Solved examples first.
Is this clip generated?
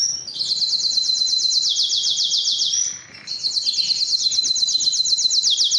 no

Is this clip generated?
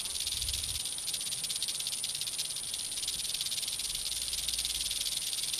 no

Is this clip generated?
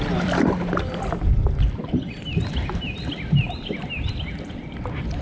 yes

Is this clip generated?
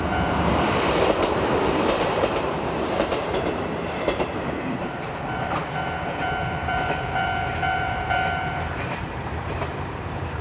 yes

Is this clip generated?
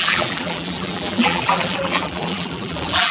yes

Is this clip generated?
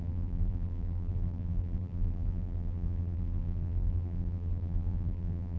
yes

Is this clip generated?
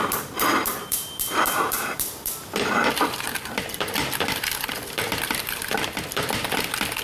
yes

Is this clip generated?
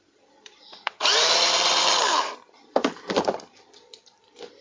yes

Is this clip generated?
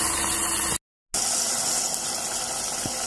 no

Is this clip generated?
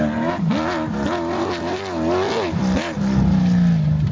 no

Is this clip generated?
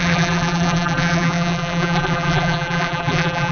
yes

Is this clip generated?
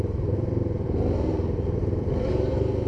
yes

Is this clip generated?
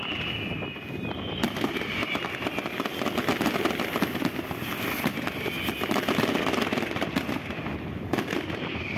no